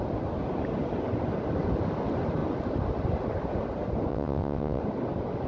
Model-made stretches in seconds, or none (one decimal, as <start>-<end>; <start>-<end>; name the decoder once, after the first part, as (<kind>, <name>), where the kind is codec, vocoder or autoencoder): 4.1-4.8 (vocoder, WaveNeXt)